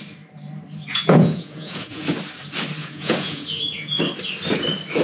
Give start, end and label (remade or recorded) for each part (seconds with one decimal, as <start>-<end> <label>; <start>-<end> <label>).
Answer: 0.0-0.9 recorded; 0.9-2.0 remade; 2.0-2.8 recorded; 2.8-4.0 remade; 4.0-5.0 recorded

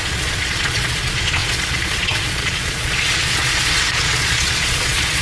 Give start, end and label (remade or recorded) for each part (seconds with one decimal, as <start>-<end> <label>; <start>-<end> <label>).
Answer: 0.0-5.2 remade

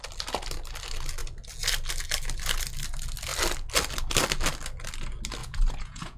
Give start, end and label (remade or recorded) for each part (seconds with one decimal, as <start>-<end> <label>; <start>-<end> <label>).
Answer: 0.0-5.4 recorded; 5.4-6.2 remade

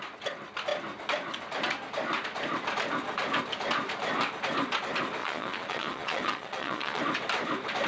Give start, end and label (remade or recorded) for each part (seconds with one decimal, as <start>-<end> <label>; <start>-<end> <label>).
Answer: 0.0-5.2 recorded; 5.2-7.0 remade; 7.0-7.9 recorded

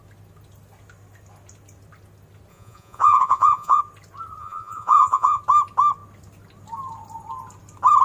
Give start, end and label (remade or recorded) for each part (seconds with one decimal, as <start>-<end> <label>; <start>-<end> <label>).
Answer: 0.0-2.5 recorded; 2.5-3.8 remade; 3.8-4.4 recorded; 4.4-5.4 remade; 5.4-8.0 recorded

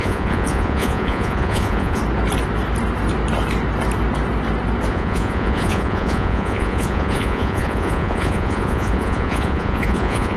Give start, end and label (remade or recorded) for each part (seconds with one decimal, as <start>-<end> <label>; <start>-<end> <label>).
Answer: 0.0-2.0 remade; 2.0-4.9 recorded; 4.9-10.4 remade